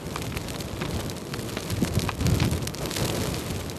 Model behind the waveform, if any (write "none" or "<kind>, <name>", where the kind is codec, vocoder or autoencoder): none